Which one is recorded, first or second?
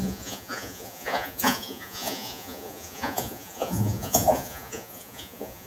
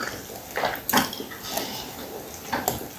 second